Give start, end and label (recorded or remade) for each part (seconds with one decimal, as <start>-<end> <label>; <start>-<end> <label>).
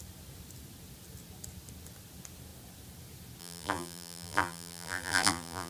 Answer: 0.0-3.4 recorded; 3.4-5.7 remade